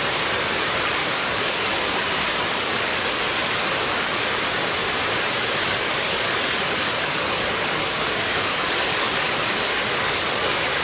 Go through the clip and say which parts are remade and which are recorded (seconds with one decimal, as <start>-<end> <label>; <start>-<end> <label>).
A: 0.0-1.0 recorded; 1.0-3.1 remade; 3.1-5.6 recorded; 5.6-10.8 remade